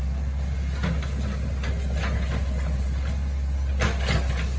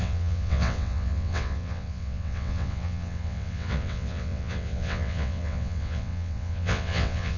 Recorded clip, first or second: first